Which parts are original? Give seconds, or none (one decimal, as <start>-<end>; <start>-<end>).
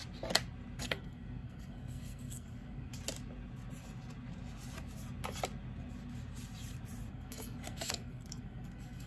0.0-0.8; 2.9-7.1